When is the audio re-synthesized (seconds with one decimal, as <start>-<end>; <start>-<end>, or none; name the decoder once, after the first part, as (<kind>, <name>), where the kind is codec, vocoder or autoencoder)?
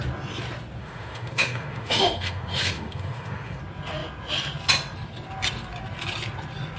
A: 0.8-3.6 (autoencoder, DAC-VAE)